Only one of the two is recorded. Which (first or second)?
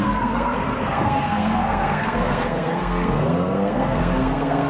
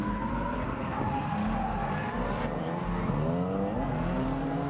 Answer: second